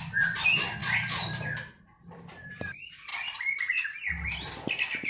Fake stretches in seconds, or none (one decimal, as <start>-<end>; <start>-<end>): 0.8-2.5; 3.1-3.8

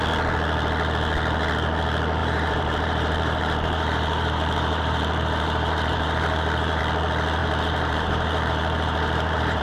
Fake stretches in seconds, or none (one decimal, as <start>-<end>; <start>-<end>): 2.2-6.8; 7.4-9.6

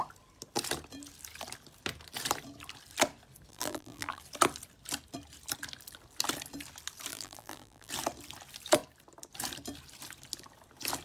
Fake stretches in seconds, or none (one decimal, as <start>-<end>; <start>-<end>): 3.5-4.2; 7.1-7.9

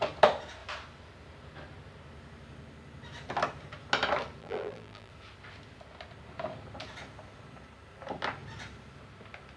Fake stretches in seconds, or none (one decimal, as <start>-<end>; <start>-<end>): 4.4-5.1

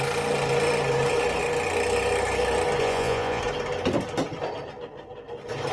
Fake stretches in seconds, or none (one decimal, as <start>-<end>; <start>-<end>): 2.8-3.4

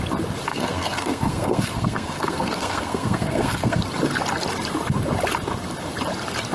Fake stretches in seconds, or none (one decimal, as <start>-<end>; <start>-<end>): 0.5-3.8

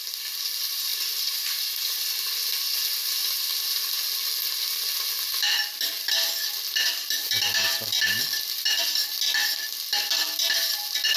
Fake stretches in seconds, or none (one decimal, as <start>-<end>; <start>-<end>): none